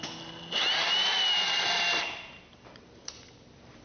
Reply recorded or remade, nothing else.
recorded